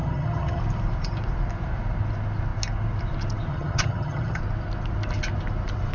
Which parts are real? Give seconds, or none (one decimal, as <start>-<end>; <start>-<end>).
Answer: 0.6-3.5; 4.4-5.9